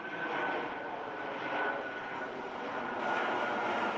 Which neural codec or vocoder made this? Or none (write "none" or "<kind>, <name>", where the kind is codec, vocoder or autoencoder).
vocoder, BigVGAN v2